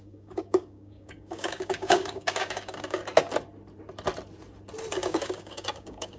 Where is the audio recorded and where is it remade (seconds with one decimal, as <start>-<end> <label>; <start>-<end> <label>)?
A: 0.0-3.0 remade; 3.0-4.9 recorded; 4.9-6.2 remade